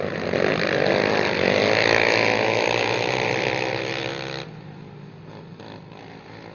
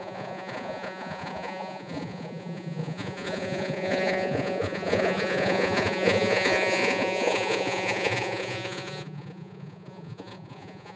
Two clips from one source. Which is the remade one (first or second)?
second